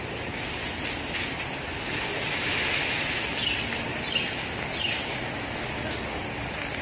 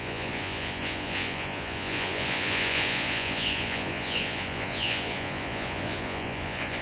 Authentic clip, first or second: first